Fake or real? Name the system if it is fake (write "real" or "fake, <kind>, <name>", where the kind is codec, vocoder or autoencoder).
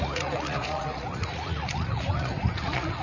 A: fake, vocoder, Vocos